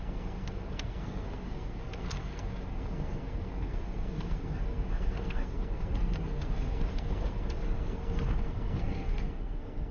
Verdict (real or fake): fake